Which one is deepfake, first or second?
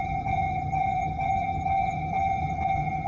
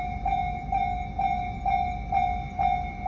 first